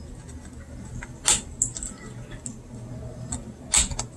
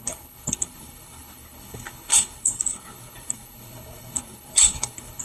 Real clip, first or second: first